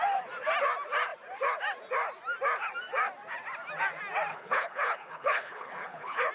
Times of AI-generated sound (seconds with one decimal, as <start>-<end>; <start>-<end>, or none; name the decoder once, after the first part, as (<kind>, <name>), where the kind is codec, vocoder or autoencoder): 4.3-6.3 (codec, HILCodec)